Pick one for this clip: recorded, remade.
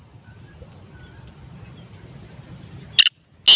recorded